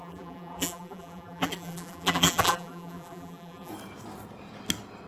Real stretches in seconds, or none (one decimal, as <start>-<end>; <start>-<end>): 3.7-5.1